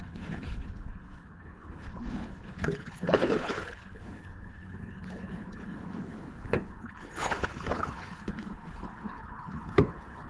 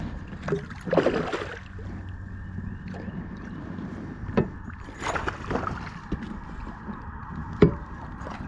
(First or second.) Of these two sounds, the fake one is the first